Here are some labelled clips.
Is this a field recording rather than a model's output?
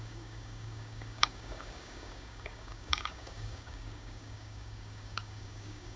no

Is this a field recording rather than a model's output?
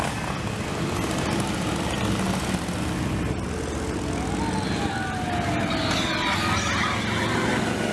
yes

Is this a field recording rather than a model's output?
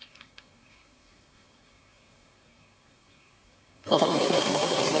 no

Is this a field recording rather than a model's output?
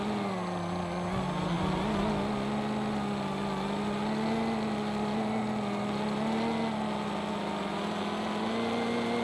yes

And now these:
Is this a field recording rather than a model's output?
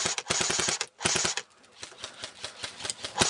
yes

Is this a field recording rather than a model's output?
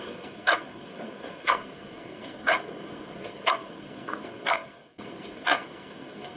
no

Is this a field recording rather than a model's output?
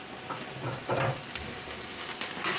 yes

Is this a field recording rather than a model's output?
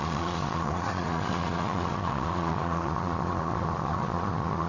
no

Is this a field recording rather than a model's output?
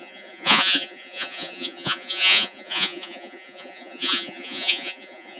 no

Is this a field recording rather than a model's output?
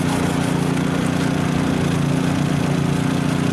yes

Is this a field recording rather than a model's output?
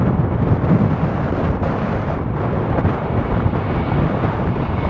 yes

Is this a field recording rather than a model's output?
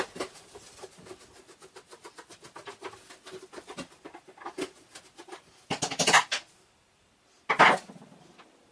yes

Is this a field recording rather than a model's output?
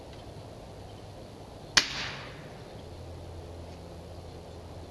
yes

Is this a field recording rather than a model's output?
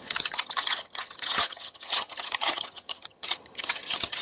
no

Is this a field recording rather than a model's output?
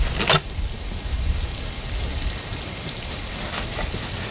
yes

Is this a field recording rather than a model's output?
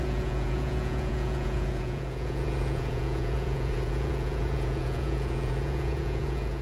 no